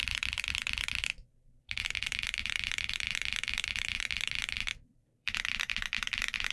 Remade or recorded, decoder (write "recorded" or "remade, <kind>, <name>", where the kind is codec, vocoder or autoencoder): remade, vocoder, BigVGAN v2